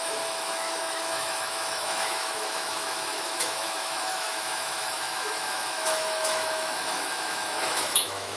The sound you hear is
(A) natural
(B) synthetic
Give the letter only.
B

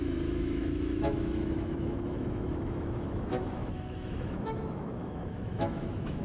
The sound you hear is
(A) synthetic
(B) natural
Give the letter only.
A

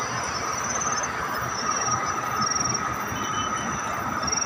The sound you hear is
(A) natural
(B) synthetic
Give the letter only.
A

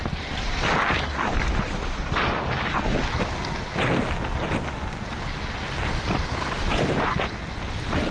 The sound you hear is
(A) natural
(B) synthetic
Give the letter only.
A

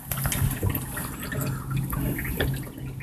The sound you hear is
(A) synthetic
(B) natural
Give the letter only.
B